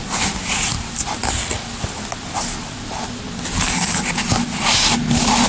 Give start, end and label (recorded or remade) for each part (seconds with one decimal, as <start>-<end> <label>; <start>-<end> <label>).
0.0-5.5 recorded